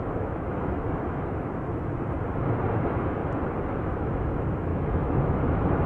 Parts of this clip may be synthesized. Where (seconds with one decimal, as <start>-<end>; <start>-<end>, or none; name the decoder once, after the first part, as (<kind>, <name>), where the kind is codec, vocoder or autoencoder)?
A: 0.0-1.7 (autoencoder, DAC-VAE); 2.7-3.2; 3.7-5.9